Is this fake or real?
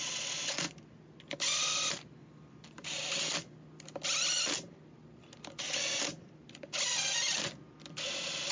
real